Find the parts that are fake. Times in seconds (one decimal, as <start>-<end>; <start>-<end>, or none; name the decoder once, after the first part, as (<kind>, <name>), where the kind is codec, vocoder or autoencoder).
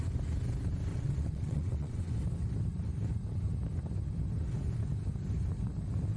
0.9-2.1 (vocoder, WaveNeXt)